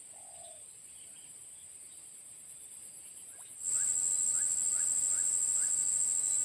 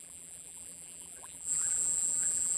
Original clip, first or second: first